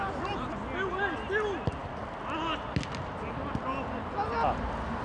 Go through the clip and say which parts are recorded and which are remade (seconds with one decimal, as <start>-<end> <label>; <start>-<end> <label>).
0.0-5.0 recorded